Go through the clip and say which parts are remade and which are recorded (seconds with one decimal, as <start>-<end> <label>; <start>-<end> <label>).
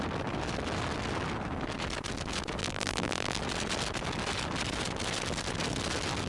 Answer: 0.0-2.6 recorded; 2.6-3.4 remade; 3.4-6.3 recorded